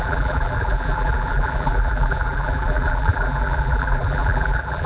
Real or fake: fake